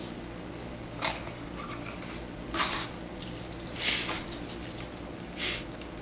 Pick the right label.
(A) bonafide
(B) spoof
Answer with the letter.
A